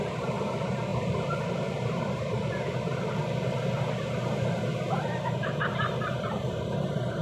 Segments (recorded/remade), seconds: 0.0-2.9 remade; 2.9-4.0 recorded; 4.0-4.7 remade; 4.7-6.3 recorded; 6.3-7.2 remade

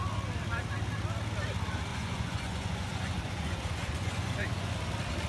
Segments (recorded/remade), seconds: 0.0-1.9 recorded; 1.9-4.7 remade; 4.7-5.3 recorded

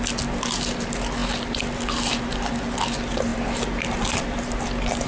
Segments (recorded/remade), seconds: 0.0-5.1 recorded

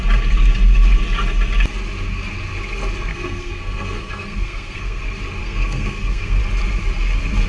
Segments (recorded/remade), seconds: 0.0-3.1 recorded; 3.1-5.0 remade; 5.0-5.4 recorded; 5.4-6.4 remade; 6.4-7.5 recorded

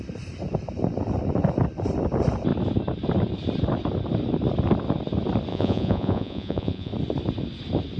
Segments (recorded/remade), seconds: 0.0-5.5 recorded; 5.5-6.9 remade; 6.9-8.0 recorded

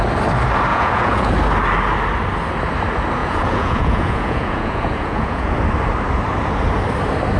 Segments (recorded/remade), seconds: 0.0-0.7 recorded; 0.7-1.3 remade; 1.3-3.2 recorded; 3.2-5.5 remade; 5.5-7.4 recorded